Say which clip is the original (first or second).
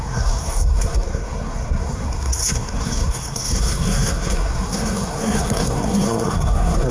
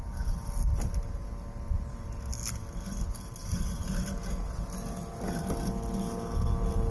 second